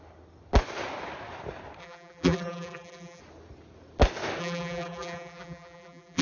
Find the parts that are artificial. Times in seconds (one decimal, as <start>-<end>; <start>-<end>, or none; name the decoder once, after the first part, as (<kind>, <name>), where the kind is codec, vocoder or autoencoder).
1.8-3.2 (vocoder, BigVGAN v2); 4.4-6.2